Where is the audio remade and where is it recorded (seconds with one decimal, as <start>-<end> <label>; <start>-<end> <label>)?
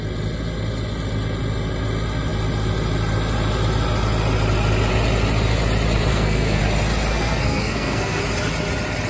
0.0-6.1 recorded; 6.1-6.6 remade; 6.6-7.1 recorded; 7.1-8.2 remade; 8.2-9.1 recorded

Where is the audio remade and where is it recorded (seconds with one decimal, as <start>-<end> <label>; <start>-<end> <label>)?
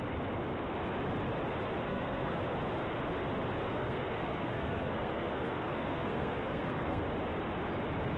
0.0-1.8 recorded; 1.8-2.4 remade; 2.4-3.7 recorded; 3.7-7.0 remade; 7.0-8.2 recorded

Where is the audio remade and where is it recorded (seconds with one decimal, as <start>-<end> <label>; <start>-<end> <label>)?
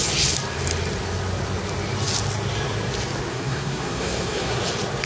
0.0-3.3 recorded; 3.3-4.6 remade; 4.6-5.1 recorded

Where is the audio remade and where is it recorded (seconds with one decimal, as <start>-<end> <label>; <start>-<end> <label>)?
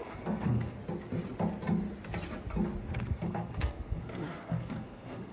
0.0-0.8 remade; 0.8-2.8 recorded; 2.8-5.3 remade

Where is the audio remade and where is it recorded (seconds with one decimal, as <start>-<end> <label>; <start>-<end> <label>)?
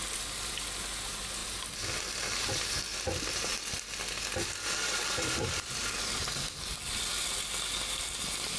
0.0-8.6 recorded